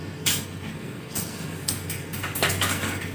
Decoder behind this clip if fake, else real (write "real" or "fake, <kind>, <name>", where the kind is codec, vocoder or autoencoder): fake, codec, SNAC